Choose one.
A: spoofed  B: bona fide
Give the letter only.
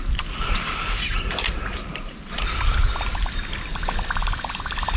A